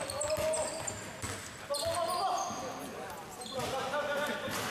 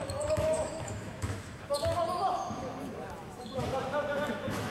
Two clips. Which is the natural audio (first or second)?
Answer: first